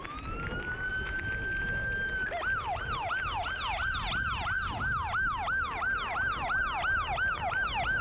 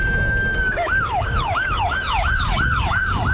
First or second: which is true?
first